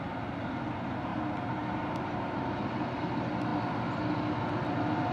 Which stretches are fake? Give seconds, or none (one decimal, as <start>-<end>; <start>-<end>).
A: 1.1-3.1